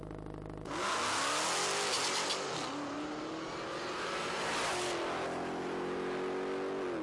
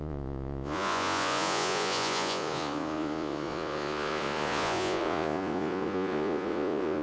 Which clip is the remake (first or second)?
second